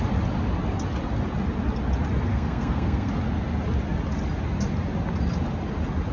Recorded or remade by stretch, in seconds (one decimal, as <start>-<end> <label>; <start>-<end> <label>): 0.0-2.3 recorded; 2.3-3.1 remade; 3.1-6.1 recorded